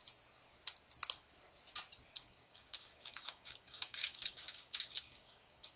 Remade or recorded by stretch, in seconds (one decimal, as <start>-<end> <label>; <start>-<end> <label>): 0.0-2.2 recorded; 2.2-5.8 remade